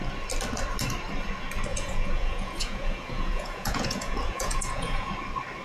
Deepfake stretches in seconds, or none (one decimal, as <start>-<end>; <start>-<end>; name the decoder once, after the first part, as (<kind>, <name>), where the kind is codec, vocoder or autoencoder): 1.7-5.1 (vocoder, Vocos)